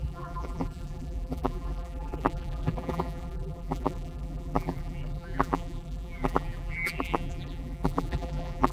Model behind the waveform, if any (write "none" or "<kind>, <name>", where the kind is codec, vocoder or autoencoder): vocoder, BigVGAN v2